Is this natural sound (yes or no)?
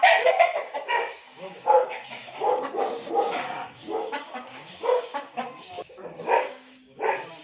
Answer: no